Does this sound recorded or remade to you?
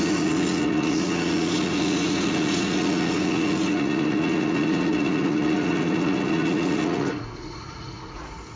remade